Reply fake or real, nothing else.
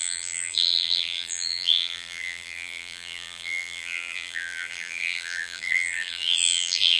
fake